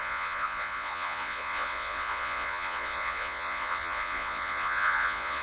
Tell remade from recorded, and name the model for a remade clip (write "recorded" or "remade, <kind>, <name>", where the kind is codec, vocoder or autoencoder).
remade, vocoder, Vocos